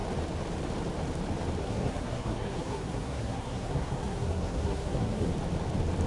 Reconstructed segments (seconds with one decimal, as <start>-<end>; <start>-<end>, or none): 1.6-5.3